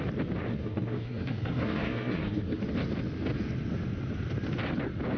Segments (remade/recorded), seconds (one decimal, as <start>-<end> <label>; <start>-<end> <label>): 0.0-0.5 recorded; 0.5-2.6 remade; 2.6-5.2 recorded